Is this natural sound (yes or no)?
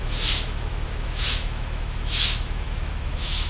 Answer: no